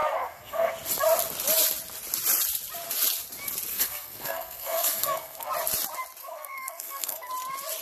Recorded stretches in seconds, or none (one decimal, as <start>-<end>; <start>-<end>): 0.7-3.7; 5.5-6.2; 7.3-7.8